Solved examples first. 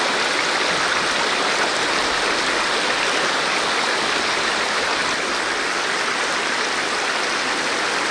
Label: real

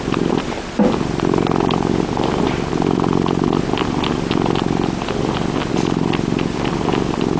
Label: real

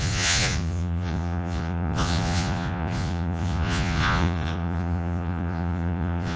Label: fake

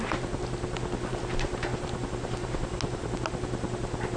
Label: real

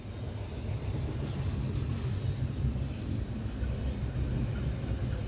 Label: real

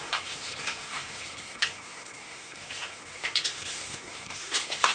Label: fake